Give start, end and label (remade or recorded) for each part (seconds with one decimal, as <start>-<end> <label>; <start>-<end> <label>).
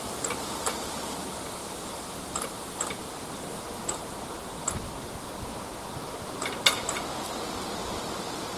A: 0.0-1.6 recorded; 1.6-4.7 remade; 4.7-8.6 recorded